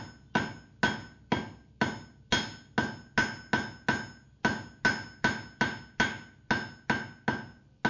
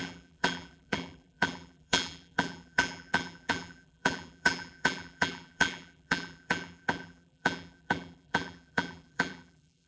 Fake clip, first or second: second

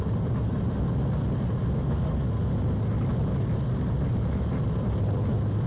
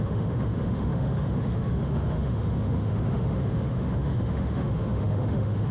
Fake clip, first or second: second